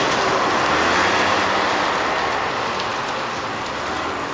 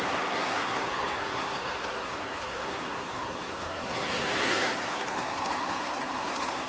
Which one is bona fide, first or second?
first